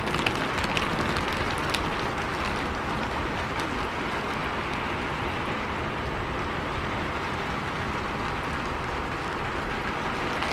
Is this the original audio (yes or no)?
yes